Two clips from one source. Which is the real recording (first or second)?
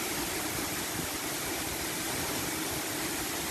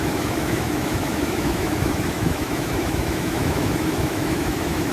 first